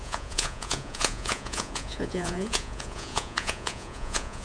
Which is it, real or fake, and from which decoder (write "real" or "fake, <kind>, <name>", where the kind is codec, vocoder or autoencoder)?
fake, vocoder, Vocos